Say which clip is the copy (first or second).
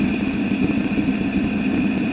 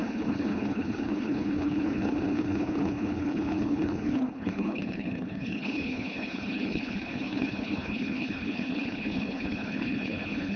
second